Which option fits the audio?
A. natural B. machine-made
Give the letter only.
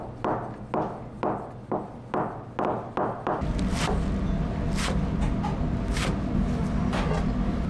A